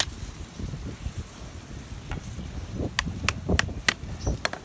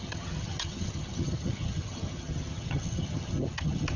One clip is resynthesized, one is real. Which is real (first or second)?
first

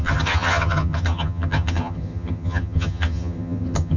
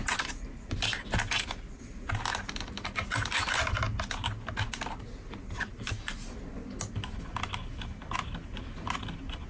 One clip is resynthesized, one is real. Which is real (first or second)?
second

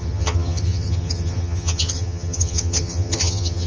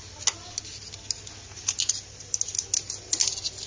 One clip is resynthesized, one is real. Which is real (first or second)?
second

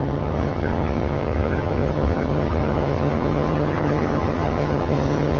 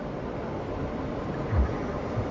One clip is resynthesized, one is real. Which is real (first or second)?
second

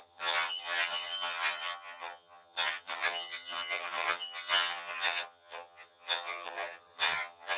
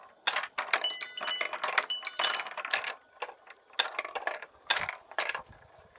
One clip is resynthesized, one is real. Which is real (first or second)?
second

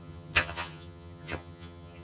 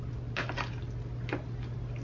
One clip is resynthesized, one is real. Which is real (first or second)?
second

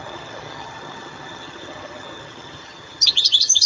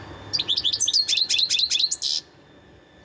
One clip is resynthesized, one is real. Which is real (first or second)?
second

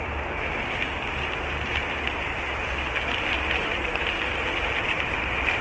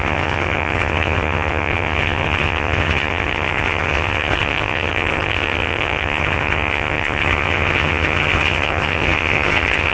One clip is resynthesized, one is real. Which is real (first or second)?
first